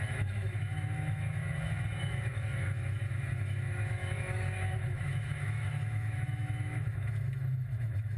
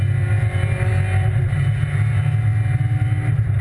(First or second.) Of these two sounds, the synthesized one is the first